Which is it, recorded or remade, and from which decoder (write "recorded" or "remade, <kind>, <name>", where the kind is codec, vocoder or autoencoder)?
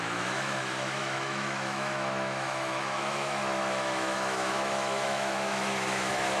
remade, autoencoder, DAC-VAE